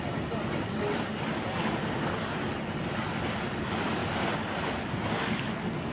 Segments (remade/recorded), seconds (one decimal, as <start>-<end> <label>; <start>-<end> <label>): 0.0-5.9 recorded